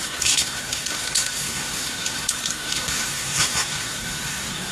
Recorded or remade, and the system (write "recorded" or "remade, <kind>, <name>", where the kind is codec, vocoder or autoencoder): remade, codec, SNAC